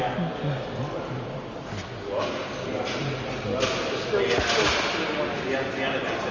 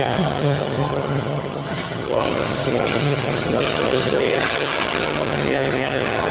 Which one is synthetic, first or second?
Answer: second